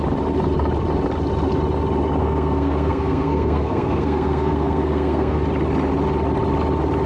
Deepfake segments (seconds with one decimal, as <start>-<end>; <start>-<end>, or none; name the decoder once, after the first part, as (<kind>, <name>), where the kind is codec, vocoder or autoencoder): 2.2-5.4 (codec, SNAC)